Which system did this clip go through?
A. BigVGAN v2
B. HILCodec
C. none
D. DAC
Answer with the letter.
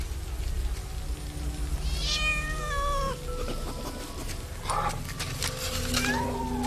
C